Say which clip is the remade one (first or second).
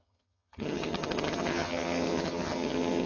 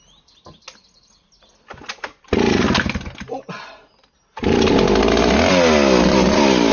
first